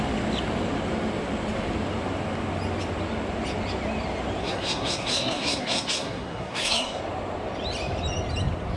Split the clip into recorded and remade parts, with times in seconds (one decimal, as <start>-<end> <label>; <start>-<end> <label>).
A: 0.0-4.4 recorded; 4.4-7.0 remade; 7.0-8.8 recorded